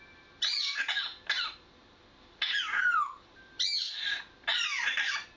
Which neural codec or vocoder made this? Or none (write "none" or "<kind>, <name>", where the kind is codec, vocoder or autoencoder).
vocoder, BigVGAN v2